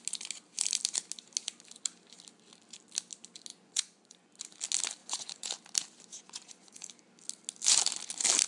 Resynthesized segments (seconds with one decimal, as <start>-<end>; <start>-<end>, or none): 3.5-4.3; 5.0-5.5; 6.1-6.9